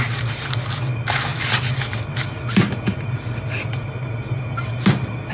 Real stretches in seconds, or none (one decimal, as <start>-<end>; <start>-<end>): 0.0-5.3